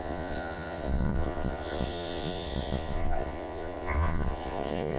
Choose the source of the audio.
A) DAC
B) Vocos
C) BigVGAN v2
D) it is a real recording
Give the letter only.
B